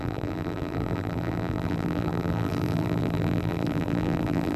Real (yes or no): no